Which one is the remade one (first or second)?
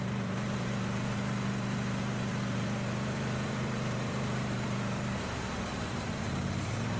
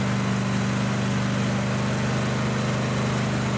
first